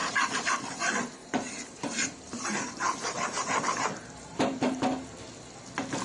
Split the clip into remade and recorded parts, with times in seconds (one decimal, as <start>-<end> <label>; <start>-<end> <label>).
0.0-0.7 remade; 0.7-1.2 recorded; 1.2-4.8 remade; 4.8-6.0 recorded